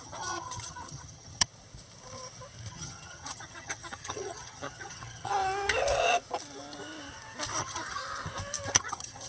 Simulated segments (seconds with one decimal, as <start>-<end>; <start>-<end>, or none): 0.0-1.5; 2.7-5.3; 7.6-8.0; 8.8-9.3